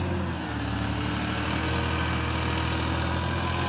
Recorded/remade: recorded